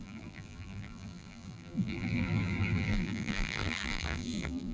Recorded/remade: remade